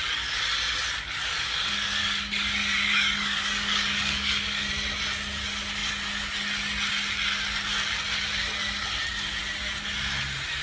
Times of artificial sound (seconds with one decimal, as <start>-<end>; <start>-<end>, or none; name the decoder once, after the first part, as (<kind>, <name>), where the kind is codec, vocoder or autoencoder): 1.2-4.7 (codec, DAC)